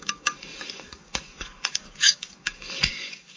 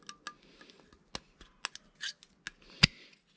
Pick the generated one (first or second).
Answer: first